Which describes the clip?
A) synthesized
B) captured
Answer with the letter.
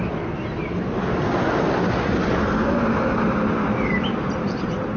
B